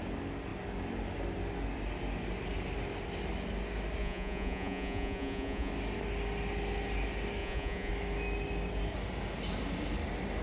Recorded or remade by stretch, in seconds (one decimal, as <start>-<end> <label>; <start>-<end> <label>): 0.0-4.0 recorded; 4.0-5.7 remade; 5.7-7.4 recorded; 7.4-7.9 remade; 7.9-10.4 recorded